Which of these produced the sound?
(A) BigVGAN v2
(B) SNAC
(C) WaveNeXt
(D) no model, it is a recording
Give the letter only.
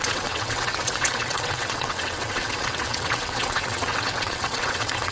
C